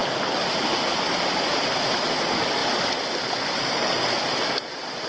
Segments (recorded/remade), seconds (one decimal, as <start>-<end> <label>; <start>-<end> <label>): 0.0-5.1 recorded